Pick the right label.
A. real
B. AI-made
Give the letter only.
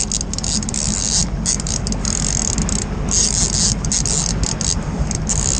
A